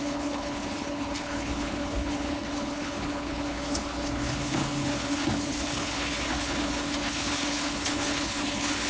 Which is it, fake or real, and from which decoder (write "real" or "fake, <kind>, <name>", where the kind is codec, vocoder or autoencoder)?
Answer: fake, codec, HILCodec